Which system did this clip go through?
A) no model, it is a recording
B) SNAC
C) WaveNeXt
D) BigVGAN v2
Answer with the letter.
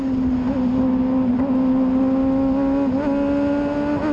A